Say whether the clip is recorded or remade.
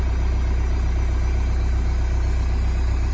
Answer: recorded